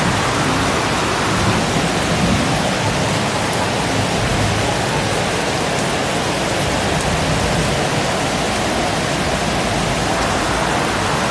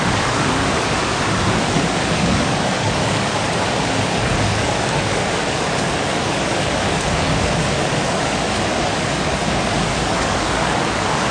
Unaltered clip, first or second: first